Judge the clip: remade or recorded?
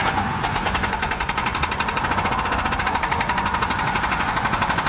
remade